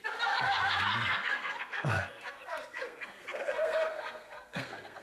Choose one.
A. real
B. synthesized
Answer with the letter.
B